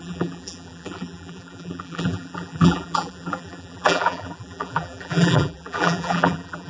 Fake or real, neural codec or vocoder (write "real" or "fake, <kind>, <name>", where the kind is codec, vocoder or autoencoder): fake, vocoder, BigVGAN v2